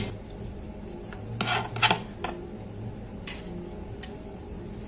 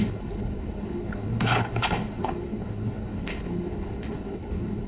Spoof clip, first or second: second